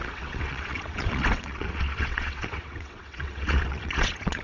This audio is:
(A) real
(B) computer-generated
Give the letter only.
B